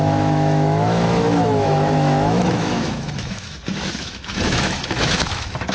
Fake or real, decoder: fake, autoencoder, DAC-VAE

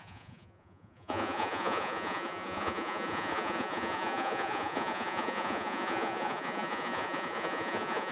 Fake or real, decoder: fake, vocoder, Vocos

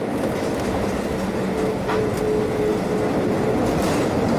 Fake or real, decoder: real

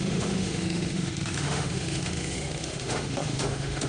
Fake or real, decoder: fake, autoencoder, DAC-VAE